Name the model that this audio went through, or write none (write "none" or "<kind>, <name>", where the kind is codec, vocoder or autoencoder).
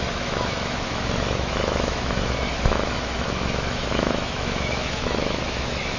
autoencoder, DAC-VAE